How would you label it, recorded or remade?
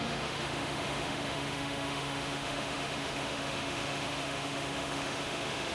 remade